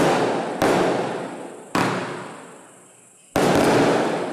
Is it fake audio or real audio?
real